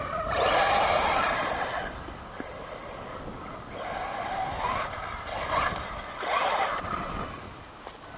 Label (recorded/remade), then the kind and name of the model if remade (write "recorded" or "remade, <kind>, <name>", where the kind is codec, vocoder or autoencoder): recorded